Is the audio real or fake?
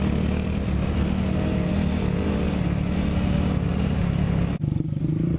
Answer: real